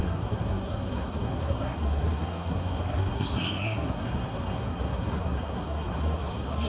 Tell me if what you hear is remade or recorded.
remade